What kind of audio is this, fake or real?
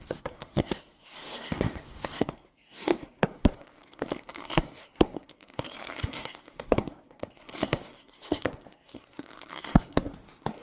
fake